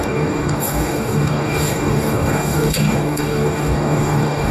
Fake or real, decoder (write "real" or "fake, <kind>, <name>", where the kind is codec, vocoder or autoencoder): fake, codec, DAC